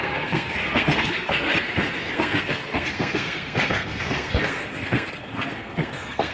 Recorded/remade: remade